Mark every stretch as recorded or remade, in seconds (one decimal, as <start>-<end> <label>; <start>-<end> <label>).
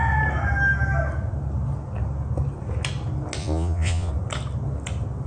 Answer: 0.0-3.4 recorded; 3.4-4.1 remade; 4.1-5.3 recorded